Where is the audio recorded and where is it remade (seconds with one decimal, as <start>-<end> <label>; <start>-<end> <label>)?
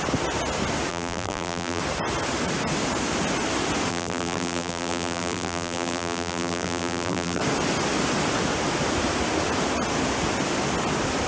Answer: 0.0-0.9 recorded; 0.9-1.8 remade; 1.8-3.9 recorded; 3.9-7.4 remade; 7.4-11.3 recorded